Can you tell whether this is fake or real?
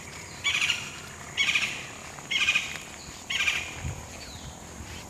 real